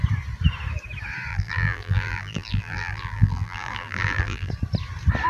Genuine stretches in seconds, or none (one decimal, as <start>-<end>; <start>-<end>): 0.0-1.3; 4.5-5.3

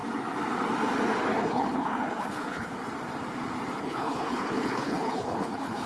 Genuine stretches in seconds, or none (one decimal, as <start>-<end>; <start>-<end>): 0.0-1.4; 2.8-3.8

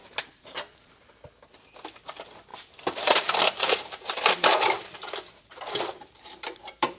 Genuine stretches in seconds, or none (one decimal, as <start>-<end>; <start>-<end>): 1.1-2.5